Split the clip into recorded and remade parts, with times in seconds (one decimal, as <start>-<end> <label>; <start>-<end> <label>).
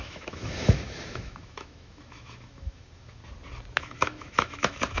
0.0-3.2 remade; 3.2-3.8 recorded; 3.8-5.0 remade